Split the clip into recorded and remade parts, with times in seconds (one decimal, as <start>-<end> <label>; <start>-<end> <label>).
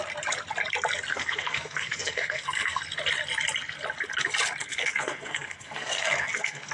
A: 0.0-1.1 recorded; 1.1-2.8 remade; 2.8-4.6 recorded; 4.6-6.7 remade